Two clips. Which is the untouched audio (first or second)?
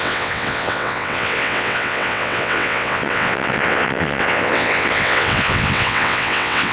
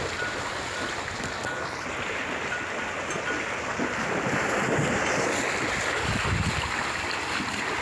second